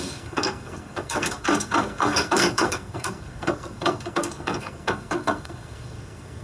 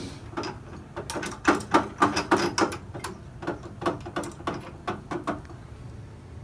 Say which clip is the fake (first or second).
first